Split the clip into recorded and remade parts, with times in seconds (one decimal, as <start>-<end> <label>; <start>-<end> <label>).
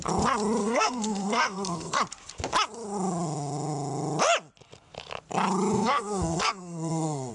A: 0.0-0.6 recorded; 0.6-1.9 remade; 1.9-5.7 recorded; 5.7-7.3 remade